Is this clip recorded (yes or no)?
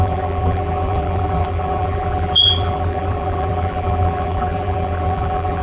no